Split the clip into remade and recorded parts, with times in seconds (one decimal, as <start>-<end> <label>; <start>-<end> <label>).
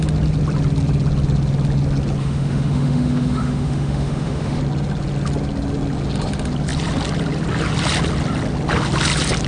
0.0-2.2 recorded; 2.2-4.6 remade; 4.6-9.5 recorded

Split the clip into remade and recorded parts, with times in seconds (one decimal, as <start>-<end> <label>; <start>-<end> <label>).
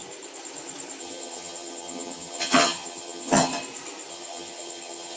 0.0-1.0 recorded; 1.0-3.5 remade; 3.5-4.1 recorded; 4.1-5.2 remade